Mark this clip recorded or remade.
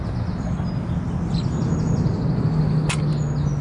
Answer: recorded